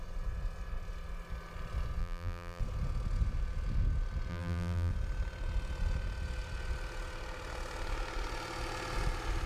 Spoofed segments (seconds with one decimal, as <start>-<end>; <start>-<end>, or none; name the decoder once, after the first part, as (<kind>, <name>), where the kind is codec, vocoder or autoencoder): 2.0-2.6 (vocoder, BigVGAN v2); 4.3-4.9